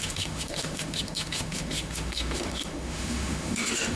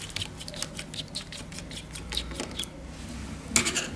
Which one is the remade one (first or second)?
first